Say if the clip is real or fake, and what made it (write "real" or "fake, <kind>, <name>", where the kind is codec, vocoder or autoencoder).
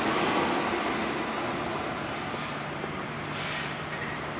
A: real